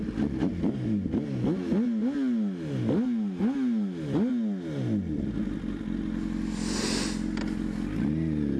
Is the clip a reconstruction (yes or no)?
no